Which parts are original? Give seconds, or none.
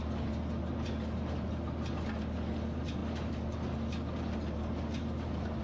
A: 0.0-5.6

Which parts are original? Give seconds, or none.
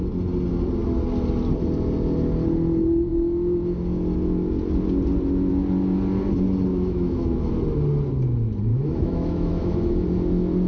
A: 0.0-6.7; 7.5-8.7; 9.9-10.7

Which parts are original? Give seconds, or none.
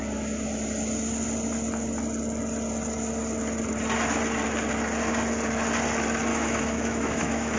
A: 0.0-6.3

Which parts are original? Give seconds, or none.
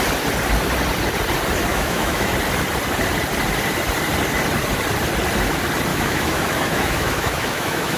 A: 0.0-1.7; 2.3-5.9